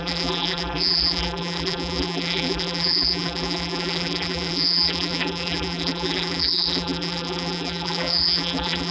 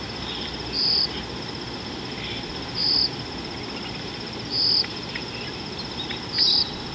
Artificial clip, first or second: first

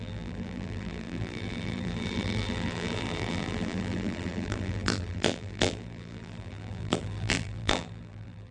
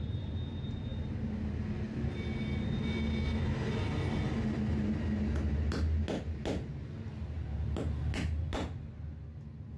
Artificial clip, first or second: first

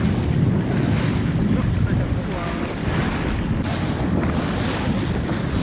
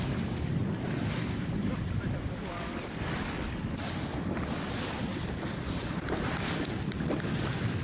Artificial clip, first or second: second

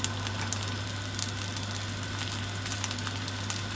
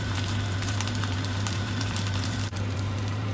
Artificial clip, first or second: second